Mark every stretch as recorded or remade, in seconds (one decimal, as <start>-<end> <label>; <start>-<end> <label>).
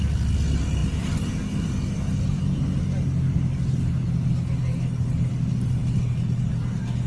0.0-7.1 recorded